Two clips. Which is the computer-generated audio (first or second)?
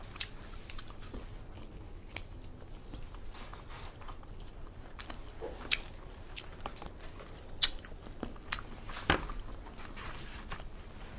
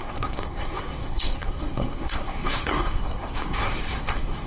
second